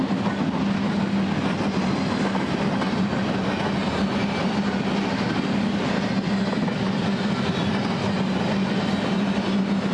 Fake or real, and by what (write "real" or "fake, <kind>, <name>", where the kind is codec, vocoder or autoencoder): real